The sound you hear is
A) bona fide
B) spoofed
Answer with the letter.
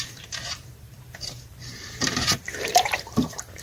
B